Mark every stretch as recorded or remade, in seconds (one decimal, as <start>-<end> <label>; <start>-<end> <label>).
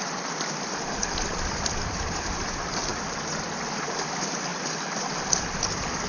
0.0-6.1 recorded